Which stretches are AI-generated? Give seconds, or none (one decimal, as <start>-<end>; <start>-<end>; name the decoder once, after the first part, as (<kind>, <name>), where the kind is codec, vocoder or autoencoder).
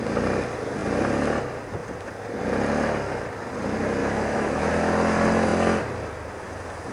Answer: 4.0-4.7 (autoencoder, DAC-VAE)